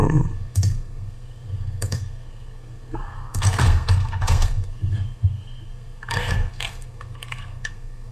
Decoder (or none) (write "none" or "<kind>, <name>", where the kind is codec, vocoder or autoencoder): codec, SNAC